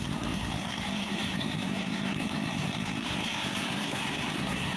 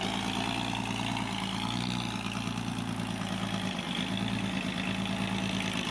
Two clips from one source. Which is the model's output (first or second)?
first